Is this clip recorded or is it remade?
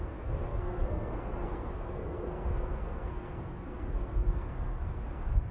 remade